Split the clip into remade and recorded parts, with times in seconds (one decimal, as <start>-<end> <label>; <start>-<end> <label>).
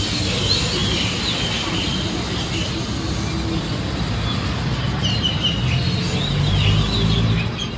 0.0-7.8 recorded